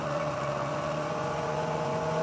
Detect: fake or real fake